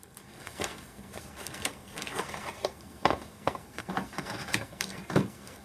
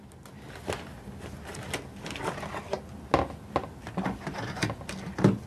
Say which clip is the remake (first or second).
first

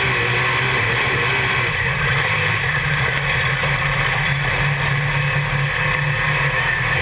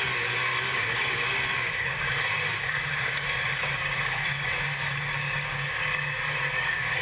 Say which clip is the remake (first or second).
second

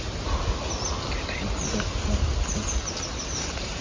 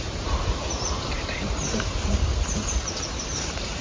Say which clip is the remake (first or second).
second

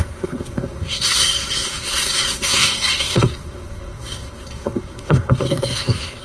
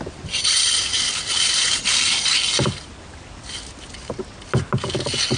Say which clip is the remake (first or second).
first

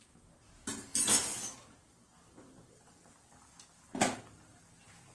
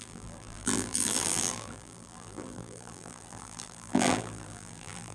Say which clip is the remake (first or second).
second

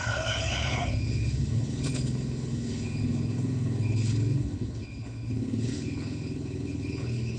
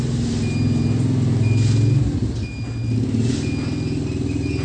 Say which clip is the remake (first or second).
first